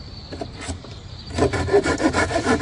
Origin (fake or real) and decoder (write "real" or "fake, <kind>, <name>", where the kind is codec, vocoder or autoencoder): real